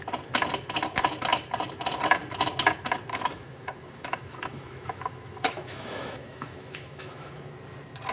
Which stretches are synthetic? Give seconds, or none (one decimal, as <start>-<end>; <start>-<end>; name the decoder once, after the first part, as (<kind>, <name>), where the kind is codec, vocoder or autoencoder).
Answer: 3.1-7.5 (autoencoder, DAC-VAE)